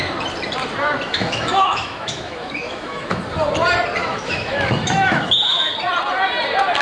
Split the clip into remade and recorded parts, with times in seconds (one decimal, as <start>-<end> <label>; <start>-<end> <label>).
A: 0.0-1.1 recorded; 1.1-3.2 remade; 3.2-4.0 recorded; 4.0-5.7 remade; 5.7-6.8 recorded